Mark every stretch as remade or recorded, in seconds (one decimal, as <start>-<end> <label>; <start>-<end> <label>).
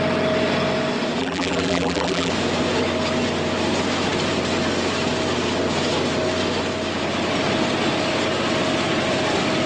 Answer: 0.0-1.2 recorded; 1.2-2.3 remade; 2.3-9.7 recorded